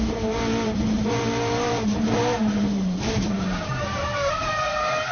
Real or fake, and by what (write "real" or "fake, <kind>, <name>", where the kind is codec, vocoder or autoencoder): fake, vocoder, BigVGAN v2